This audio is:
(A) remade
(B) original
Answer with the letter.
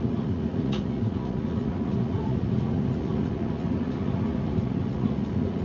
A